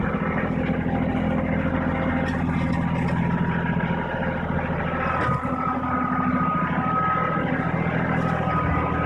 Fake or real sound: real